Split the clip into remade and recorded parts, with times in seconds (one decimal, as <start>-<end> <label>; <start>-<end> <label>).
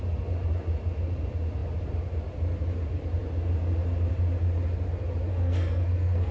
0.0-5.3 recorded; 5.3-6.3 remade